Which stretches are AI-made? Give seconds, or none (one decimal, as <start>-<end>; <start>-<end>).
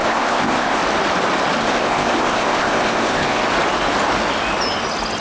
0.0-0.8; 1.6-3.4